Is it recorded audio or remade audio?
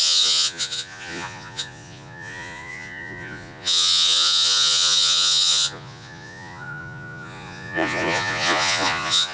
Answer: remade